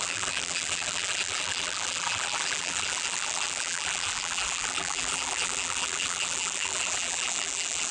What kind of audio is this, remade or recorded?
remade